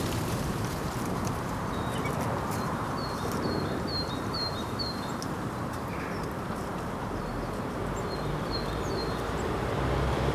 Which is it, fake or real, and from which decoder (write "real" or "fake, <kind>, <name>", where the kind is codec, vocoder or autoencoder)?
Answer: fake, vocoder, BigVGAN v2